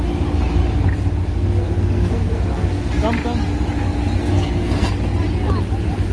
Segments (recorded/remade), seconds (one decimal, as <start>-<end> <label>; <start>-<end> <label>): 0.0-1.2 recorded; 1.2-2.9 remade; 2.9-4.2 recorded; 4.2-4.9 remade; 4.9-6.1 recorded

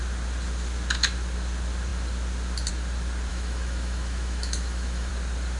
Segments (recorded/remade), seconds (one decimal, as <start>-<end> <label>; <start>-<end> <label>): 0.0-3.3 recorded; 3.3-5.1 remade; 5.1-5.6 recorded

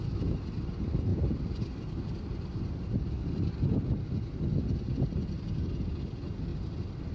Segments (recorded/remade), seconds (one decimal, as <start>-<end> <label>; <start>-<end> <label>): 0.0-1.1 recorded; 1.1-2.6 remade; 2.6-6.5 recorded; 6.5-7.1 remade